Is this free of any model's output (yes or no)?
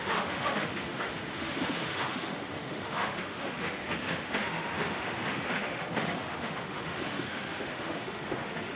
no